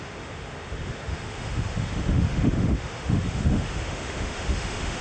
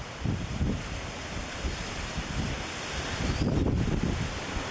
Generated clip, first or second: first